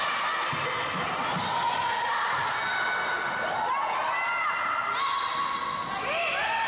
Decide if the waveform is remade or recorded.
recorded